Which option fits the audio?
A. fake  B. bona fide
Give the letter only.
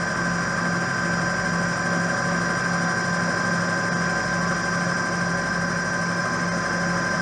B